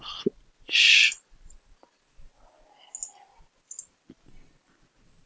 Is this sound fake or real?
real